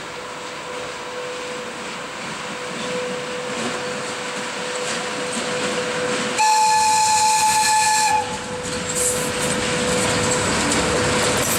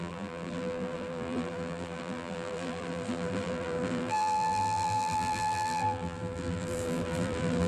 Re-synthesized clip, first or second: second